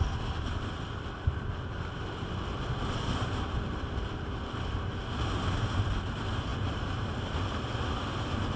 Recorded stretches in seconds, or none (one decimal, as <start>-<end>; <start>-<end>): 0.0-8.6